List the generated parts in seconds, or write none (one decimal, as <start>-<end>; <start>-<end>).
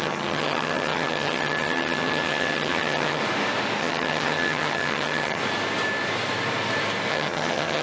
0.0-3.2; 3.8-5.4; 7.1-7.8